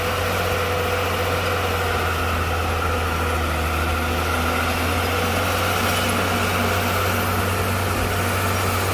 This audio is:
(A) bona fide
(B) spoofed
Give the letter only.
A